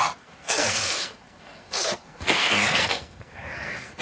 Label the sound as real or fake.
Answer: fake